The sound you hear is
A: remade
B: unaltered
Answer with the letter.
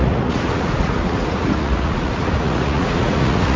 A